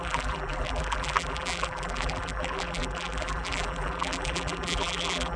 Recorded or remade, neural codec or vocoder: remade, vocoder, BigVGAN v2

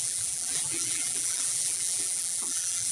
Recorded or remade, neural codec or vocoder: remade, vocoder, BigVGAN v2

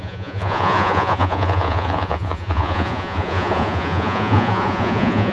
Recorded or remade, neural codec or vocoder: remade, vocoder, Vocos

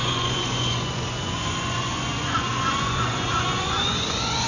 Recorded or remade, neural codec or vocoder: remade, vocoder, Vocos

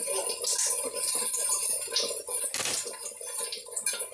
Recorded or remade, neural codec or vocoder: recorded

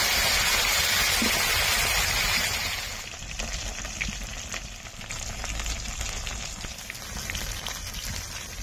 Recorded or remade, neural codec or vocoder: recorded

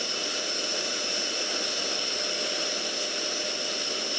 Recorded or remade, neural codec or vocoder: recorded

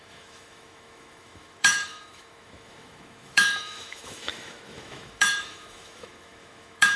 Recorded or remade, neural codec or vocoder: remade, autoencoder, DAC-VAE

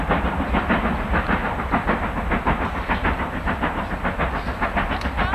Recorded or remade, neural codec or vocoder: recorded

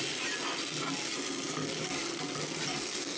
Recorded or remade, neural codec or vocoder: recorded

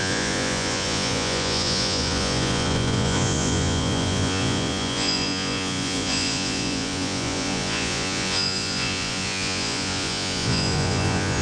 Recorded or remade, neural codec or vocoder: remade, vocoder, Vocos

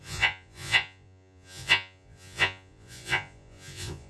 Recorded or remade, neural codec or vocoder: remade, vocoder, Vocos